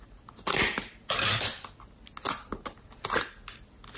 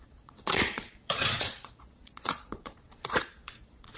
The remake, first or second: second